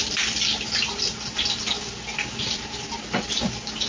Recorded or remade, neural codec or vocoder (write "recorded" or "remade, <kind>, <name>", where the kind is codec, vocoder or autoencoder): recorded